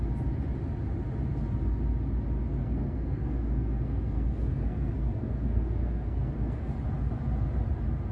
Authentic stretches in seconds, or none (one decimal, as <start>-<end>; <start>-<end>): 0.0-2.6; 6.7-8.1